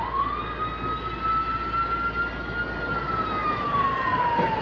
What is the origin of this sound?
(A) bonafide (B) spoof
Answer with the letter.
A